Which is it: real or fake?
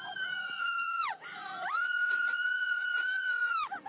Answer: fake